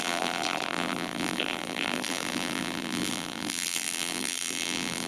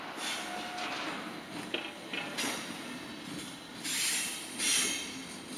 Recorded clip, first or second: second